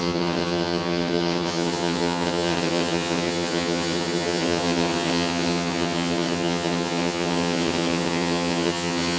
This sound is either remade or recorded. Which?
remade